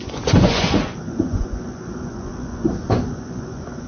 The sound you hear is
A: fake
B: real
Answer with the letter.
A